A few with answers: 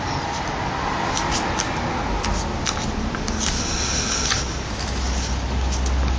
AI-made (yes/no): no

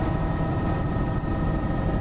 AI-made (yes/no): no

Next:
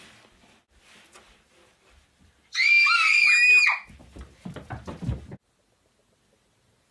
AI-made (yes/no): no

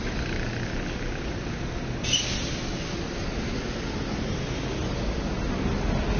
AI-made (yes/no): no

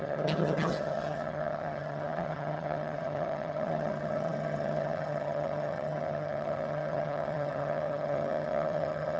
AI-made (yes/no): yes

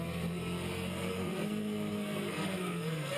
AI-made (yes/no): yes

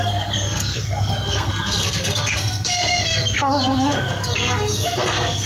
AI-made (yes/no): yes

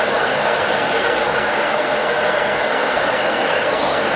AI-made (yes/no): yes